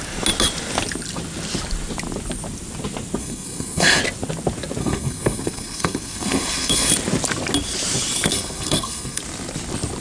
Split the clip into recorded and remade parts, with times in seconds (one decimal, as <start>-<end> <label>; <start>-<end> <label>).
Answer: 0.0-3.2 recorded; 3.2-4.0 remade; 4.0-4.8 recorded; 4.8-6.9 remade; 6.9-8.3 recorded; 8.3-9.2 remade; 9.2-10.0 recorded